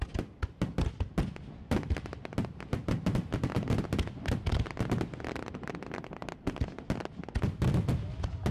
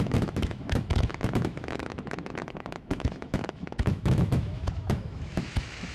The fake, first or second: second